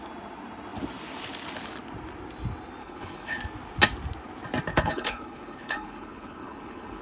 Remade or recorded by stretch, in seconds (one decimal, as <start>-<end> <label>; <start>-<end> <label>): 0.0-2.8 recorded; 2.8-3.4 remade; 3.4-4.7 recorded; 4.7-7.0 remade